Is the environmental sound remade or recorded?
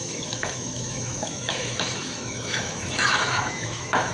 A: remade